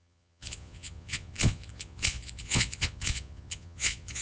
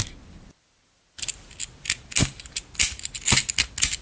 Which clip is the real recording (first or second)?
second